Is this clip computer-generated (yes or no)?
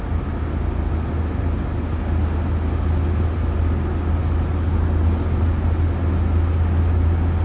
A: no